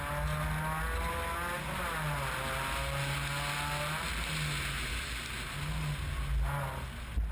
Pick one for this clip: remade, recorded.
recorded